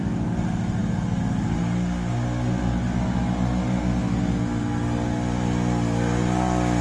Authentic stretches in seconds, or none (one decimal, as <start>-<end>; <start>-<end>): 0.0-6.8